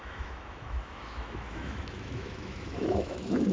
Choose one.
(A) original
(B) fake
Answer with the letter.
B